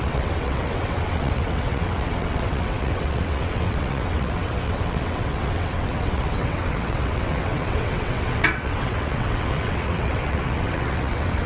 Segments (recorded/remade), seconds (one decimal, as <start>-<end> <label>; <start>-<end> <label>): 0.0-11.5 remade